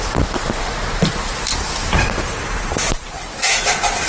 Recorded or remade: remade